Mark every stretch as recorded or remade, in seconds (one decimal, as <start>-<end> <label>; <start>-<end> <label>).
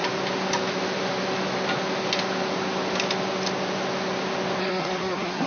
0.0-4.6 recorded; 4.6-5.5 remade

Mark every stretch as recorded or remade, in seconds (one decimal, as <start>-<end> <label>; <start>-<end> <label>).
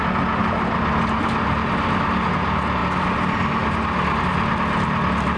0.0-5.4 recorded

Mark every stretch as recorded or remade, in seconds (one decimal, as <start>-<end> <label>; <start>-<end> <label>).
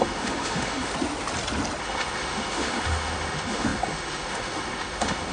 0.0-0.9 remade; 0.9-1.8 recorded; 1.8-5.3 remade